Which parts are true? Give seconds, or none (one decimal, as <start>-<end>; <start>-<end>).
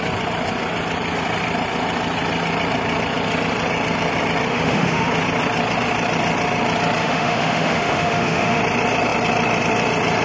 0.0-4.5; 5.1-7.0; 8.6-10.2